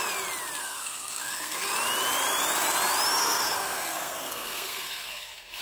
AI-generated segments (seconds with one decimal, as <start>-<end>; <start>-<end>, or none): 0.6-1.7; 3.2-5.6